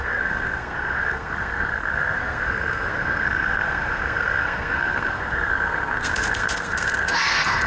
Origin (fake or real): fake